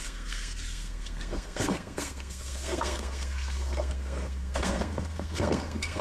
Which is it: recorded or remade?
remade